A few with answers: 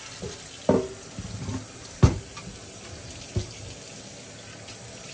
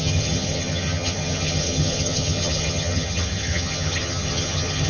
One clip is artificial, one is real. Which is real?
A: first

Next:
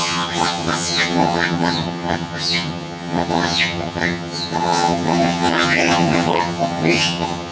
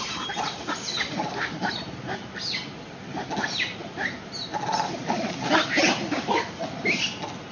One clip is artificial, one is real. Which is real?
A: second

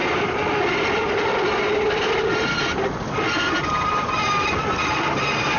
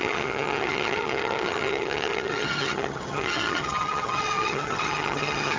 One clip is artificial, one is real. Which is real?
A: first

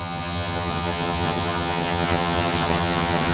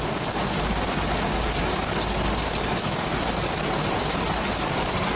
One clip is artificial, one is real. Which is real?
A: second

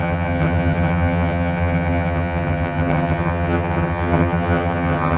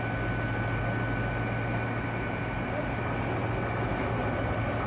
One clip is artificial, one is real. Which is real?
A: second